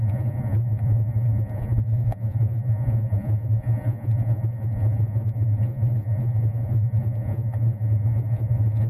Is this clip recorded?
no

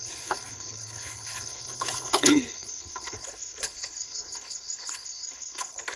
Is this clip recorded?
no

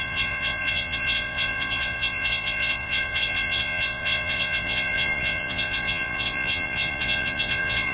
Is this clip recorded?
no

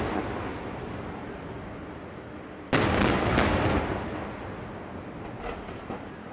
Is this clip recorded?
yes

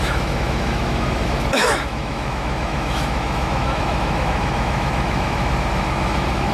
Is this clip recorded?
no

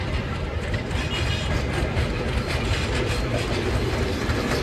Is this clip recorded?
yes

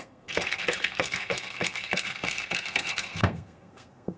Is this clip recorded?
no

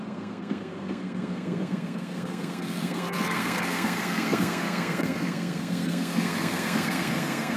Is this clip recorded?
no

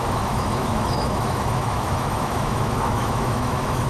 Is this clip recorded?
no